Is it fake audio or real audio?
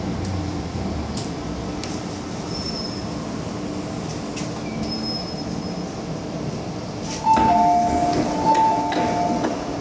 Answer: real